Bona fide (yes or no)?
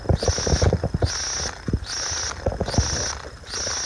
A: yes